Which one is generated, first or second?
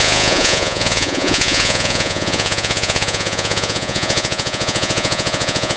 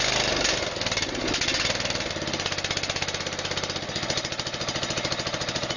first